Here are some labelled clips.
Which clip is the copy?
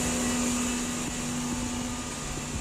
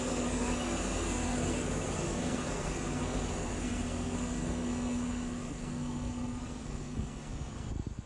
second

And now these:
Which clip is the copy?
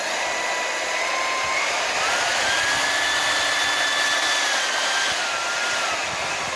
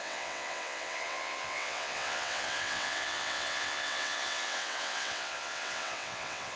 second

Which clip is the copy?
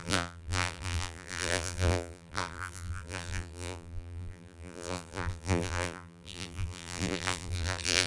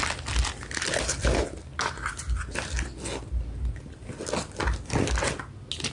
first